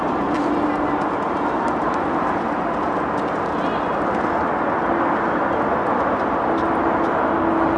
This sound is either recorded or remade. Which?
recorded